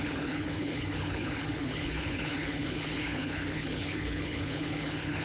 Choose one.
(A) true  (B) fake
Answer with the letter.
B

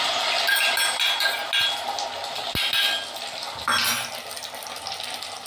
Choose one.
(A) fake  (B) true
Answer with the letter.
B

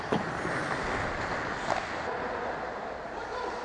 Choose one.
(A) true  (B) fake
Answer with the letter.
A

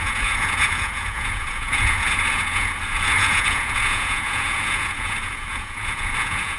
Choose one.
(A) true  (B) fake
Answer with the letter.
B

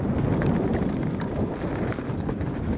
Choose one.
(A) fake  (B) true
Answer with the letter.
B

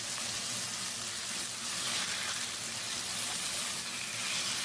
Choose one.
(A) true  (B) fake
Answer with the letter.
A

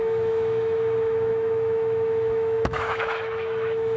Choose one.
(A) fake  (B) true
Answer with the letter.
A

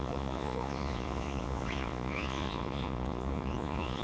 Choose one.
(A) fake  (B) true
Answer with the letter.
A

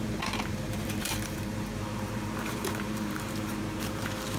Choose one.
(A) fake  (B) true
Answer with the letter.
A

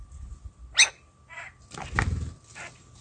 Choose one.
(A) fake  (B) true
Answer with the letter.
B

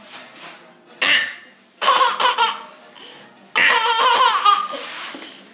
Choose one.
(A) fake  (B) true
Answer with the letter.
B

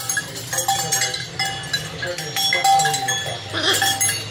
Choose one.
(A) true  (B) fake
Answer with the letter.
A